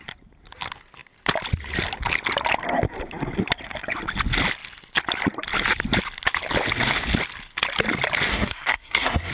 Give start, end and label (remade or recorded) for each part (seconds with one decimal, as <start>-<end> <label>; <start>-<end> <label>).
0.0-8.3 recorded; 8.3-9.3 remade